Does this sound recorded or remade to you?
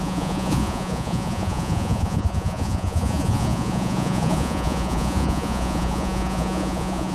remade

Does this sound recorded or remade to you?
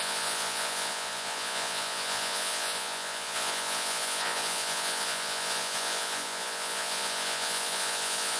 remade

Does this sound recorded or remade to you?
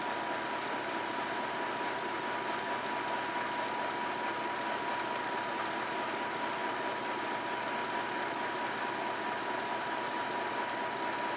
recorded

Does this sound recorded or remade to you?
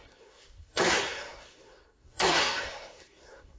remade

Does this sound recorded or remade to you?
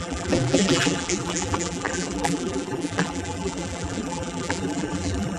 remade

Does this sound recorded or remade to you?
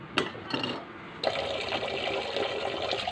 recorded